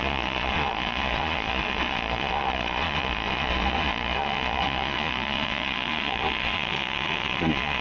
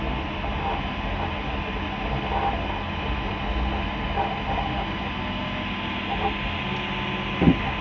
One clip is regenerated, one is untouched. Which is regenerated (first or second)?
first